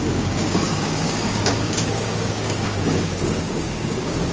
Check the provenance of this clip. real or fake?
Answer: fake